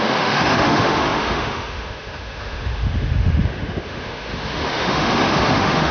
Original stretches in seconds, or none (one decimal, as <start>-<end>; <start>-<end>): none